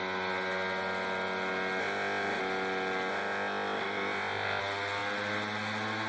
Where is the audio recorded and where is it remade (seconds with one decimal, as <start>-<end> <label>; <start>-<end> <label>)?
0.0-1.8 recorded; 1.8-2.4 remade; 2.4-3.1 recorded; 3.1-4.6 remade; 4.6-6.1 recorded